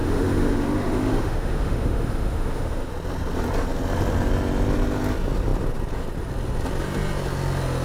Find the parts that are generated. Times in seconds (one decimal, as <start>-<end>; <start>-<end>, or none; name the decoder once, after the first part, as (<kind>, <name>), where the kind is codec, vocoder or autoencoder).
0.0-2.9 (autoencoder, DAC-VAE)